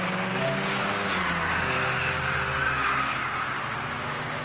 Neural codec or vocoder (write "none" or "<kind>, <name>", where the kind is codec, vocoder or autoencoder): none